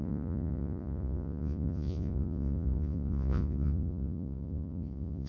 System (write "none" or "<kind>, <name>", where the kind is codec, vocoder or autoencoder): vocoder, Vocos